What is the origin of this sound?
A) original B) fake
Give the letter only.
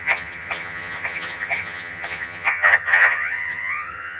B